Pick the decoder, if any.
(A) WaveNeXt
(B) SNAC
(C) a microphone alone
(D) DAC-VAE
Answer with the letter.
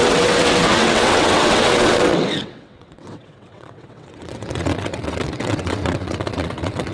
A